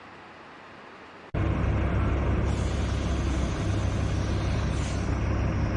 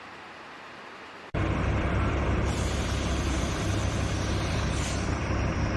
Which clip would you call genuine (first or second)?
first